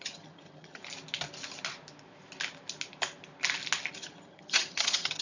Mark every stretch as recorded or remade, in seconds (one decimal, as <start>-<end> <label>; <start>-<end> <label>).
0.0-0.8 remade; 0.8-3.9 recorded; 3.9-5.2 remade

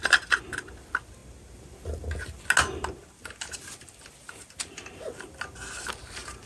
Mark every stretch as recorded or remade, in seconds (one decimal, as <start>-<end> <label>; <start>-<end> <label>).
0.0-6.5 recorded

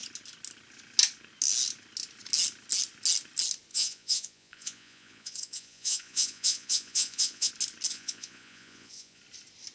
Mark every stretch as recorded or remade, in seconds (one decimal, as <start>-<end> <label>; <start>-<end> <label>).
0.0-3.7 recorded; 3.7-7.5 remade; 7.5-7.9 recorded; 7.9-9.2 remade; 9.2-9.7 recorded

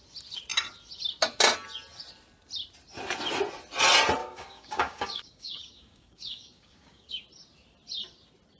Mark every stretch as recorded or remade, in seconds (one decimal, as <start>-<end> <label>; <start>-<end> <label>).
0.0-4.2 recorded; 4.2-7.1 remade; 7.1-8.6 recorded

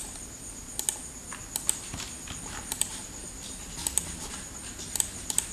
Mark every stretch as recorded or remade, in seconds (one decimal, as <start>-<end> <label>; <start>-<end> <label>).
0.0-5.5 recorded

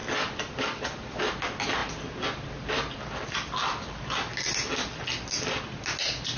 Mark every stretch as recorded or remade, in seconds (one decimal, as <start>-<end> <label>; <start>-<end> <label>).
0.0-6.4 recorded

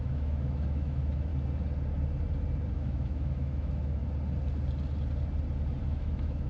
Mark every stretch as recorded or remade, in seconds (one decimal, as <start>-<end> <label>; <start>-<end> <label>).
0.0-1.3 remade; 1.3-2.7 recorded; 2.7-4.0 remade; 4.0-5.8 recorded; 5.8-6.5 remade

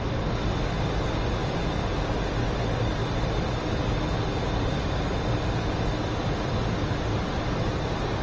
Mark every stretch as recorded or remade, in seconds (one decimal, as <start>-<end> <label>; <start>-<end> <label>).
0.0-8.2 recorded